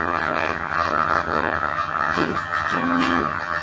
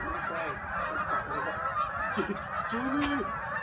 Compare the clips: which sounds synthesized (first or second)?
first